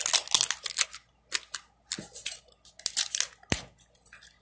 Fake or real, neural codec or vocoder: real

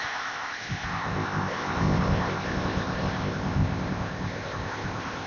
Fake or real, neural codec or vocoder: fake, codec, ZipCodec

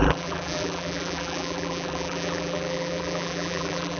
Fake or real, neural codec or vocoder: fake, vocoder, BigVGAN v2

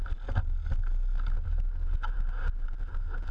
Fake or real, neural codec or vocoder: real